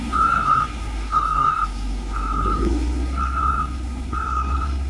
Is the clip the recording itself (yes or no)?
no